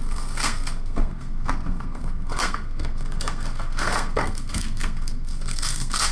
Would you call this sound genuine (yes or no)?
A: no